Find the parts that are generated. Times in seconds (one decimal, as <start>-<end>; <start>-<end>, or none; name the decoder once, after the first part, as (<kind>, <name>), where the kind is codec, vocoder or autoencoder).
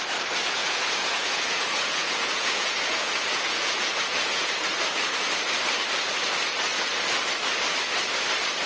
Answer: 0.6-4.5 (vocoder, Vocos)